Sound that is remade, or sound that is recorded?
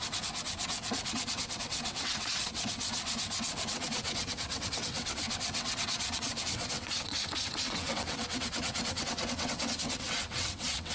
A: remade